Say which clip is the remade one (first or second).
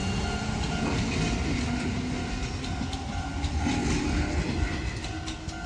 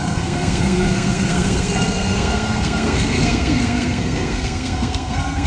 second